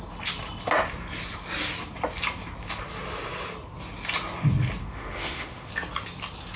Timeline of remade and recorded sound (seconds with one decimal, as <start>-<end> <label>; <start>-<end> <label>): 0.0-4.8 recorded; 4.8-5.7 remade; 5.7-6.6 recorded